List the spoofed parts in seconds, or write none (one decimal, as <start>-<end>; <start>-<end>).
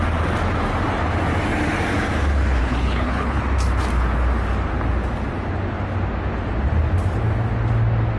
2.6-3.4